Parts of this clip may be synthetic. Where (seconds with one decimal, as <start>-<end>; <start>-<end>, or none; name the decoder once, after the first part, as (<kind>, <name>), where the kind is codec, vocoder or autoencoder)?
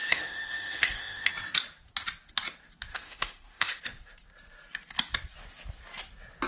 0.0-1.3 (autoencoder, DAC-VAE); 2.9-3.8